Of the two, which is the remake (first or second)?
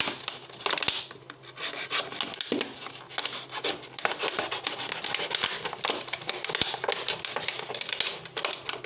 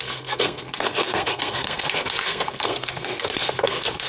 second